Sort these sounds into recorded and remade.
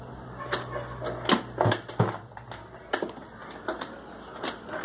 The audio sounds recorded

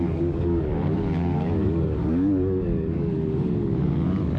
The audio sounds remade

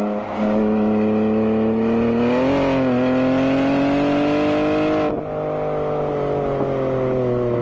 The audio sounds recorded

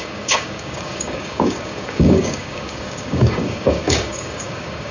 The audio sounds remade